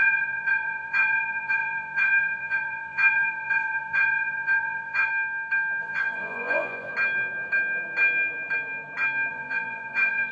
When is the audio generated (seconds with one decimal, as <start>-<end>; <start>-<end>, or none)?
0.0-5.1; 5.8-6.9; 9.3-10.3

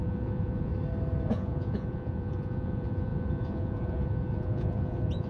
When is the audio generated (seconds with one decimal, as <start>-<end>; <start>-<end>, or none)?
0.0-0.7; 1.3-5.3

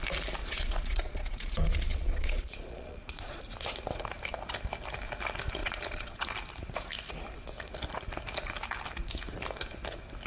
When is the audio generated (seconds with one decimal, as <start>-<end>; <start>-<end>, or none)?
0.4-3.4; 5.6-6.2

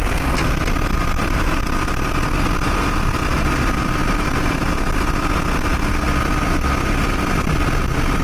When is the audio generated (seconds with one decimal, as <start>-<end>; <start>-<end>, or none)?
none

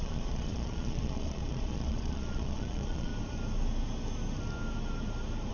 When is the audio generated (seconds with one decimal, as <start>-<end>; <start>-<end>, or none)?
0.0-3.1

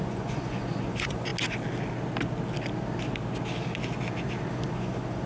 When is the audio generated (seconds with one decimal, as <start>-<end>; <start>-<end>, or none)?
0.0-1.3; 4.5-5.3